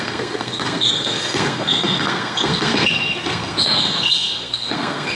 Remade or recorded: remade